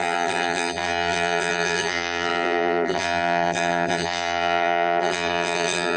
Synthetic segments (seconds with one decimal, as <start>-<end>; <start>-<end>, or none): 0.0-6.0